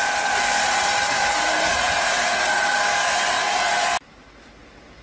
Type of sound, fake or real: real